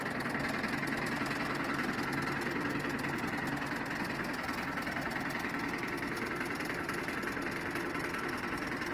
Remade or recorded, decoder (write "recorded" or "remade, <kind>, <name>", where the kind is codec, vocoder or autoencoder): recorded